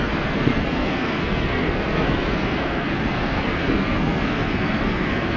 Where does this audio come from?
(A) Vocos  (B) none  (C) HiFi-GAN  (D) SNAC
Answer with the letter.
D